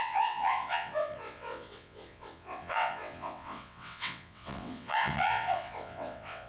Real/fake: fake